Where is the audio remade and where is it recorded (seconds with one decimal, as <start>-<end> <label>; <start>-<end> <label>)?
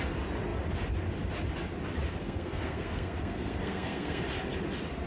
0.0-2.2 recorded; 2.2-4.2 remade; 4.2-5.1 recorded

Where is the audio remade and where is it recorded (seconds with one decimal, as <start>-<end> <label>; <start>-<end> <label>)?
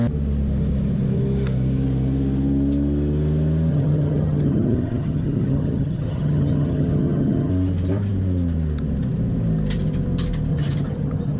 0.0-3.7 recorded; 3.7-7.5 remade; 7.5-10.5 recorded; 10.5-11.4 remade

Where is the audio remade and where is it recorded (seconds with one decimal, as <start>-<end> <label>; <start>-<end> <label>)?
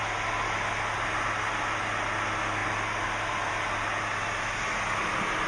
0.0-5.5 recorded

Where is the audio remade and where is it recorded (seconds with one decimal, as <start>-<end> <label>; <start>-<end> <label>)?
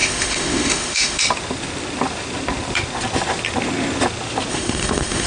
0.0-1.2 remade; 1.2-4.5 recorded; 4.5-5.3 remade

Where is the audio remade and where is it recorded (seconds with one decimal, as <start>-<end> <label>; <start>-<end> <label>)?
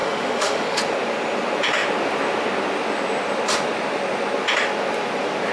0.0-0.8 remade; 0.8-5.5 recorded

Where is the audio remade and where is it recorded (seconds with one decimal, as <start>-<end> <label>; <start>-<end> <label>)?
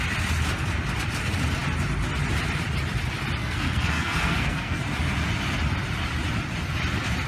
0.0-3.4 recorded; 3.4-4.8 remade; 4.8-7.3 recorded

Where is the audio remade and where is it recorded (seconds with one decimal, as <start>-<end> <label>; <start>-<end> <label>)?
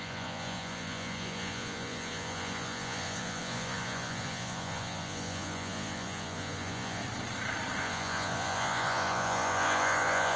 0.0-7.0 remade; 7.0-7.8 recorded; 7.8-10.4 remade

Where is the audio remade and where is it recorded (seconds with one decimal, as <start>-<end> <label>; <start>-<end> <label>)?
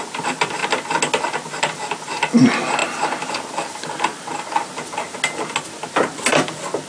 0.0-6.9 recorded